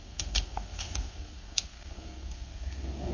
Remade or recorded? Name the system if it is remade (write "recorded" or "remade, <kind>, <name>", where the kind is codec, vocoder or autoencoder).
remade, codec, SNAC